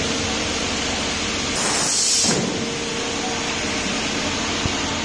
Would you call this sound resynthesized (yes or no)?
no